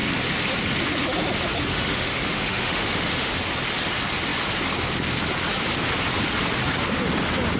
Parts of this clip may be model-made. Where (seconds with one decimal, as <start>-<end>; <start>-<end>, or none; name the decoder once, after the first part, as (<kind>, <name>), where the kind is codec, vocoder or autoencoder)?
1.7-3.4 (autoencoder, DAC-VAE)